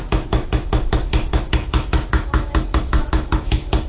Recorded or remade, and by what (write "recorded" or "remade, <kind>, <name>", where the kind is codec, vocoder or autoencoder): remade, autoencoder, DAC-VAE